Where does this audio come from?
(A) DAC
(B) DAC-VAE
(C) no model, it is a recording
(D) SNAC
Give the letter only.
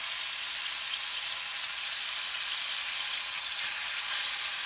C